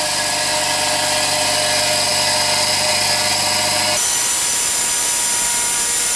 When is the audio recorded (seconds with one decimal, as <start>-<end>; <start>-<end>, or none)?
0.0-6.2